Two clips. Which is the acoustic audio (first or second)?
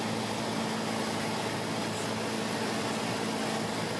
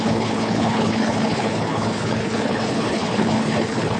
first